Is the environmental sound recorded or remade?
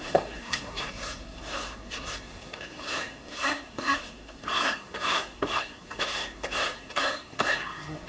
remade